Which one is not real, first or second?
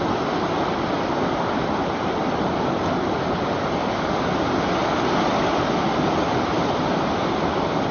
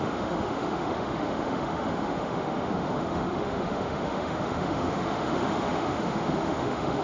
second